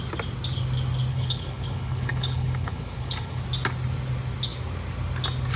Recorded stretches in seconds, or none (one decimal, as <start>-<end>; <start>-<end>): 0.0-1.1; 3.4-5.6

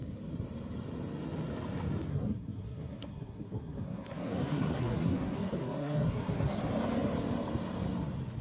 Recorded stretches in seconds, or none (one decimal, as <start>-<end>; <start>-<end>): 0.0-2.1; 6.6-8.4

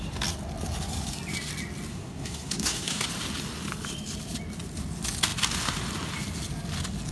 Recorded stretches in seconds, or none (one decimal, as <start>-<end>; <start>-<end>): 0.0-1.9; 3.1-7.1

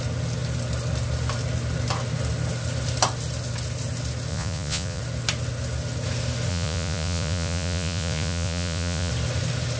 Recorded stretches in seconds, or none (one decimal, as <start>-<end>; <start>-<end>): 0.0-4.3; 5.0-6.5; 9.1-9.8

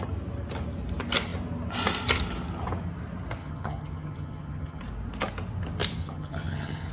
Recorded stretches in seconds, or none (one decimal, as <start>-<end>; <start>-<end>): 0.0-3.4; 4.8-6.0

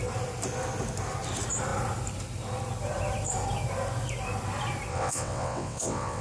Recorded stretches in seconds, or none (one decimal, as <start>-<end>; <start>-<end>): 0.0-4.9

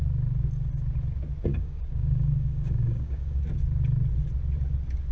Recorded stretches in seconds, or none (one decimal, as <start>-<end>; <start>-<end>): 0.0-1.5; 3.4-5.1

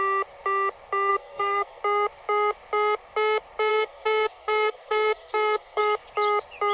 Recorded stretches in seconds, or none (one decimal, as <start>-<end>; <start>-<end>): 0.0-1.1; 1.8-3.7; 5.8-6.7